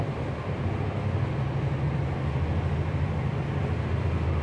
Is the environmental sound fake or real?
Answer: real